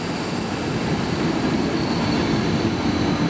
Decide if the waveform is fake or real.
real